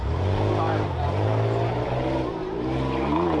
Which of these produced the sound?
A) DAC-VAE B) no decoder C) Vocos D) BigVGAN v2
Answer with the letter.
B